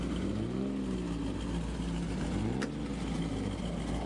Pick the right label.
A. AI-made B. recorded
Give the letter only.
B